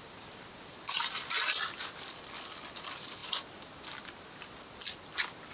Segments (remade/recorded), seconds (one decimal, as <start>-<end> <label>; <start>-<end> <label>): 0.0-5.5 recorded

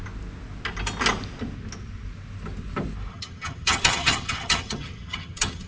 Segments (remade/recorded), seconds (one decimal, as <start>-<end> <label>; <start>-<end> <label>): 0.0-3.1 recorded; 3.1-5.7 remade

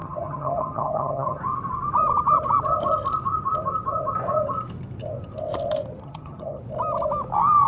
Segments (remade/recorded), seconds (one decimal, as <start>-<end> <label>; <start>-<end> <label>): 0.0-1.4 remade; 1.4-6.0 recorded; 6.0-6.6 remade; 6.6-7.7 recorded

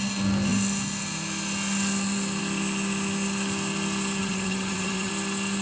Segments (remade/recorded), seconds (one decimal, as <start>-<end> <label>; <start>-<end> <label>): 0.0-4.2 recorded; 4.2-5.1 remade; 5.1-5.6 recorded

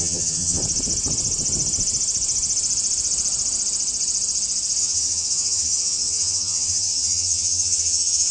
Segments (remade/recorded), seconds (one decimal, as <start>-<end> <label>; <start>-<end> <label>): 0.0-0.6 remade; 0.6-4.8 recorded; 4.8-8.3 remade

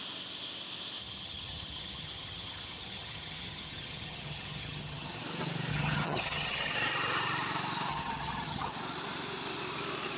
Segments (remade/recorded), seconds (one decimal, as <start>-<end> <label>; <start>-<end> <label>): 0.0-1.0 recorded; 1.0-5.2 remade; 5.2-5.7 recorded; 5.7-6.7 remade; 6.7-7.9 recorded; 7.9-8.7 remade; 8.7-10.2 recorded

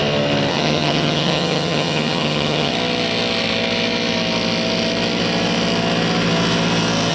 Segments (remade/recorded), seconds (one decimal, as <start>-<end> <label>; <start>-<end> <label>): 0.0-0.5 recorded; 0.5-2.7 remade; 2.7-7.1 recorded